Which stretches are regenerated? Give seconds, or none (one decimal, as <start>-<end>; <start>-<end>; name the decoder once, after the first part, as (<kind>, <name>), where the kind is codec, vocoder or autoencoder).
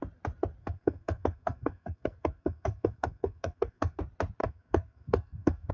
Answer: 0.6-4.0 (codec, SNAC); 4.4-5.7